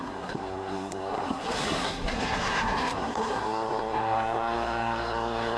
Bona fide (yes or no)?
no